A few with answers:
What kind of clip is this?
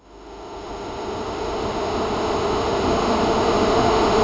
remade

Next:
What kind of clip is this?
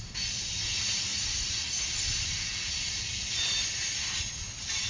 recorded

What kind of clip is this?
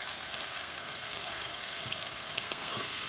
remade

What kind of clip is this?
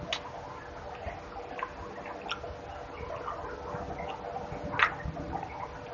recorded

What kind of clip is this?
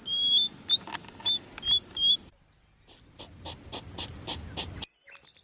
recorded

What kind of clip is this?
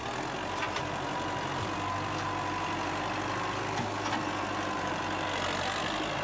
recorded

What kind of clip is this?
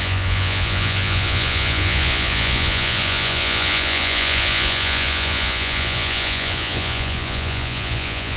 remade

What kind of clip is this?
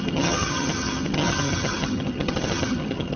remade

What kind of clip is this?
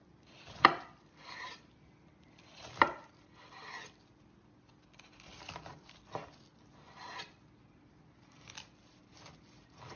recorded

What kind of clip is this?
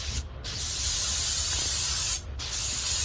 recorded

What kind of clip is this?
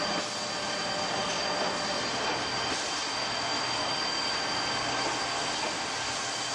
recorded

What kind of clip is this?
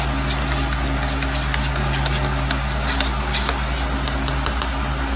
recorded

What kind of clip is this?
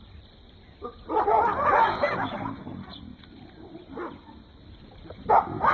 recorded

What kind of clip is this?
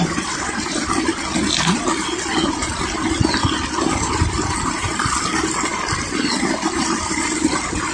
recorded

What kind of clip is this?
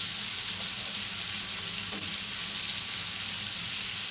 recorded